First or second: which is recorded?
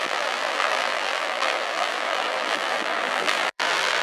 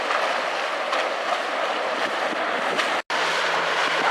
second